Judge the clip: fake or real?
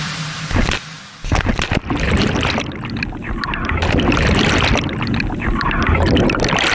real